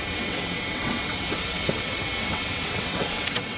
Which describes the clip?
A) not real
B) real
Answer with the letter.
A